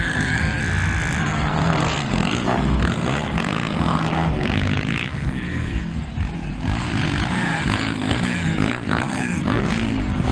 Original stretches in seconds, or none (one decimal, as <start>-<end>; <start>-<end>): 0.6-1.2; 6.1-7.3